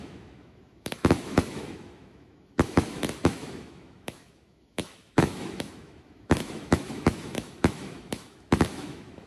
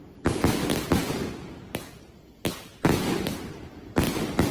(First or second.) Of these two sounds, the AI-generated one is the first